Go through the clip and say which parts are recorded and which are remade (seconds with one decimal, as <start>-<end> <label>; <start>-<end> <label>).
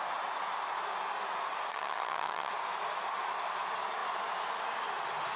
0.0-1.7 recorded; 1.7-2.5 remade; 2.5-5.4 recorded